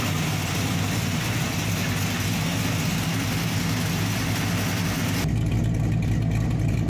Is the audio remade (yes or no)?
no